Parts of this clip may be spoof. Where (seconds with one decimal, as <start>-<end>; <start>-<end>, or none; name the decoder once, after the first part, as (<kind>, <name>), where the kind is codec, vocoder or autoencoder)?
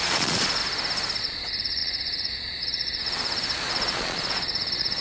0.0-0.6 (vocoder, Vocos); 1.2-5.0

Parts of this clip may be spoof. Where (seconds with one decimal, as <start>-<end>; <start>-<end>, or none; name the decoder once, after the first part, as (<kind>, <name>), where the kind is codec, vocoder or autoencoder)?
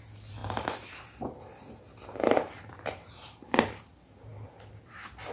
0.4-3.5 (vocoder, BigVGAN v2)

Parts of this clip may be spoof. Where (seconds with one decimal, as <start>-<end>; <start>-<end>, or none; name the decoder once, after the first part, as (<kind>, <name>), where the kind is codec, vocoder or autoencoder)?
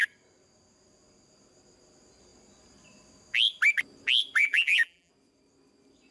4.4-5.1 (vocoder, BigVGAN v2)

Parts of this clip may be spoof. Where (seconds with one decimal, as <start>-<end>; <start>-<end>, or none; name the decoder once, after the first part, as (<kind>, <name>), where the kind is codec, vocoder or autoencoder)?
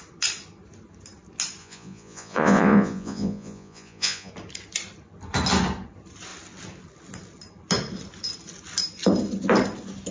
1.6-4.3 (vocoder, Vocos)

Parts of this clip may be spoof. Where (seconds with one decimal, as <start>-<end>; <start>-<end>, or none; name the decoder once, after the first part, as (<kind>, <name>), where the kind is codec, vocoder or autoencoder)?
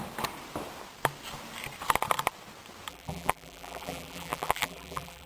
2.9-5.3 (vocoder, BigVGAN v2)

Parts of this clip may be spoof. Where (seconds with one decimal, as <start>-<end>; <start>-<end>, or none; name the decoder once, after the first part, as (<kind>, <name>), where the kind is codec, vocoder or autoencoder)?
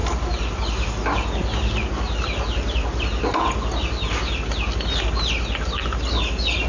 none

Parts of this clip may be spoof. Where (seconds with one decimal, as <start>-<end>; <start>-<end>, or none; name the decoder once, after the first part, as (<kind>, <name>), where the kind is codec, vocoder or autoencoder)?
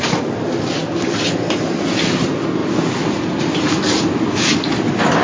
none